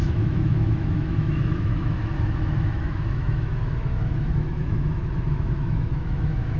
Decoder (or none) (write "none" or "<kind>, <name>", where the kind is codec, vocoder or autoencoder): autoencoder, DAC-VAE